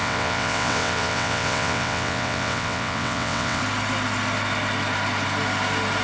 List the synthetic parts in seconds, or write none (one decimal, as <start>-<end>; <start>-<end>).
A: 0.0-3.6